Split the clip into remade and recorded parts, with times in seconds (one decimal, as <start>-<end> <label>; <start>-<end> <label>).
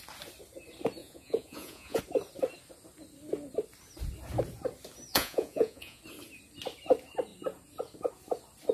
0.0-1.0 recorded; 1.0-2.0 remade; 2.0-5.1 recorded; 5.1-6.0 remade; 6.0-8.7 recorded